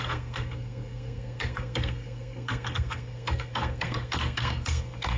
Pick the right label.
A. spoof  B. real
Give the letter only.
A